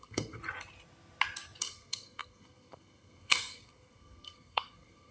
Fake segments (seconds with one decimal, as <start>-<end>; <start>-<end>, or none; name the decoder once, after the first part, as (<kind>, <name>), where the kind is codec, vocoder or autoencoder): 0.0-0.4 (codec, SNAC); 1.6-5.1